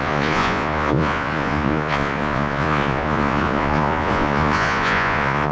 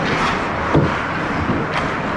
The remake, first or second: first